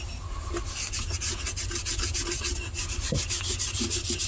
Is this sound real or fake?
real